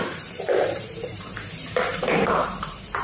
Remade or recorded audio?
remade